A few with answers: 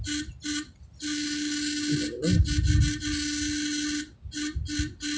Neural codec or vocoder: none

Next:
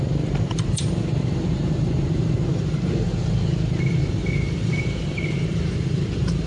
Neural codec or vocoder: vocoder, BigVGAN v2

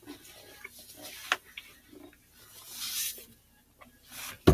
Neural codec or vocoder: none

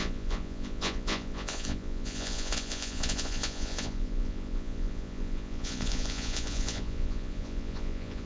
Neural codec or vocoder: vocoder, Vocos